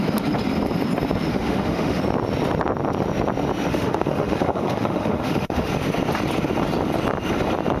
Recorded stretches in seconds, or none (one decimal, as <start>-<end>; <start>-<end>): 0.0-1.3; 2.0-3.7; 5.7-7.8